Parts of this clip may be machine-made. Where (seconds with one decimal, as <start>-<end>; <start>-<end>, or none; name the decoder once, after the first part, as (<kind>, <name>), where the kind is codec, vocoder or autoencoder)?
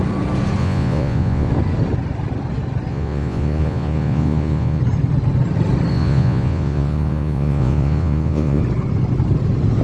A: 0.6-1.5 (vocoder, Vocos); 2.9-4.8; 5.9-8.6